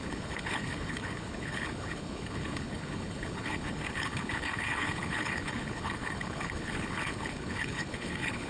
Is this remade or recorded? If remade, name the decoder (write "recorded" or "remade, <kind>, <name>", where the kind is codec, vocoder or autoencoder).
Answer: remade, codec, HILCodec